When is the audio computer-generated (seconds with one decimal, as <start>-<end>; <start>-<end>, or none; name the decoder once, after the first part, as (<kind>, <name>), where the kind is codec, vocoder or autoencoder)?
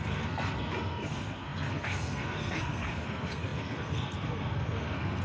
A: 0.0-5.2 (codec, SNAC)